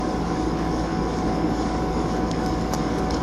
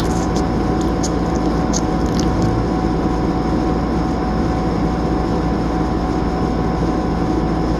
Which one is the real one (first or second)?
second